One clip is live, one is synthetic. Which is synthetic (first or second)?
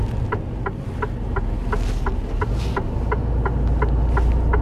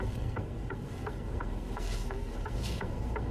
second